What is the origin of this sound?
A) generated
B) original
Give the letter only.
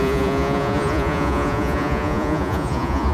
A